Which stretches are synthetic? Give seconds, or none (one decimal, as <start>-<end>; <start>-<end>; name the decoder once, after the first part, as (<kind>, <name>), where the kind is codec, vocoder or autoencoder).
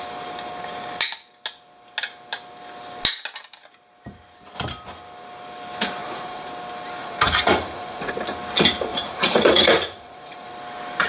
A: 6.0-6.5 (vocoder, Vocos); 7.0-8.1; 8.9-10.5